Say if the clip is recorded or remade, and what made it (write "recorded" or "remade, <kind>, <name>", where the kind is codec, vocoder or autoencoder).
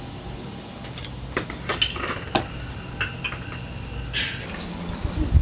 recorded